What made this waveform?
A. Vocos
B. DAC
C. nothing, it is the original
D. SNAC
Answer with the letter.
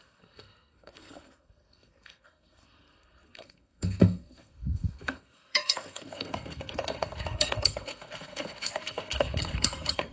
D